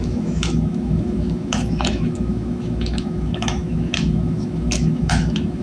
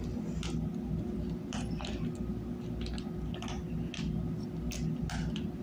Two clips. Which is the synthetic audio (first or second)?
first